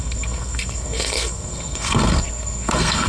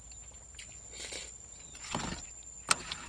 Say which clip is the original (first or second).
second